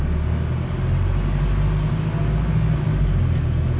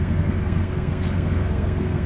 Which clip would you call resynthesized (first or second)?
second